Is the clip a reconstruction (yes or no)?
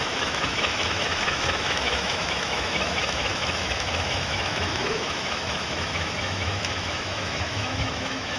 yes